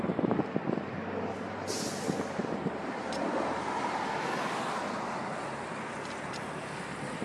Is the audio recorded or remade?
recorded